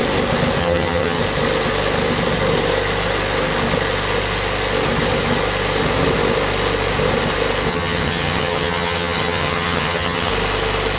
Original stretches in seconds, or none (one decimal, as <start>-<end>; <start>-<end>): 0.0-0.6; 1.2-7.7; 10.3-11.0